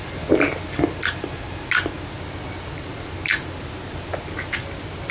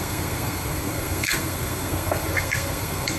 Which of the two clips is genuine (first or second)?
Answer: first